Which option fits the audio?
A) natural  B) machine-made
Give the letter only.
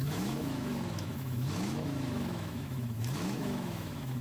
B